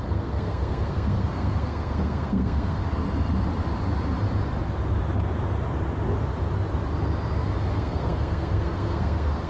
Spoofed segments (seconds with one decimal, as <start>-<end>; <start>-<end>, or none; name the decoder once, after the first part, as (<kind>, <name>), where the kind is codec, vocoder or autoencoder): 0.0-2.8 (codec, SNAC); 7.7-9.5